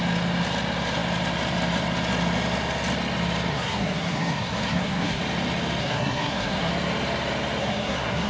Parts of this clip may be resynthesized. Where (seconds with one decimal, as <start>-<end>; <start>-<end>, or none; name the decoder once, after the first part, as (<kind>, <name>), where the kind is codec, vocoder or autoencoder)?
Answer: 3.5-5.2 (codec, SNAC); 5.8-6.7; 7.6-8.3